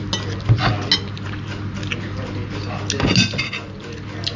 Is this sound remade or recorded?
recorded